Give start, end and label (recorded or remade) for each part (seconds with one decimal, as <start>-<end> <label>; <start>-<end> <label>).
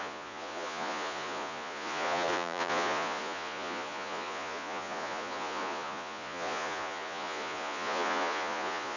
0.0-9.0 remade